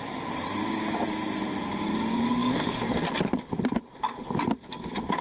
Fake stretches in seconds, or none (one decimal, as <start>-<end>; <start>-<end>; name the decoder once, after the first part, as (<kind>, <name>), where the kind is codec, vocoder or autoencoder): none